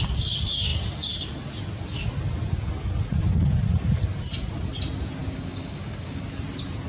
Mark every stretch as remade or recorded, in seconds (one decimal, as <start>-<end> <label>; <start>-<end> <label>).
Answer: 0.0-5.2 recorded; 5.2-6.2 remade; 6.2-6.9 recorded